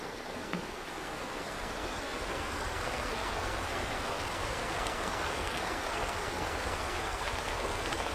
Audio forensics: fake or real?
fake